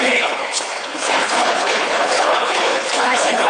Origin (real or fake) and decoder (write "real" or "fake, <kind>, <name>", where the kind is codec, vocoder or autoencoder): fake, codec, HILCodec